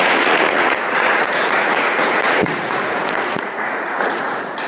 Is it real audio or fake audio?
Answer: fake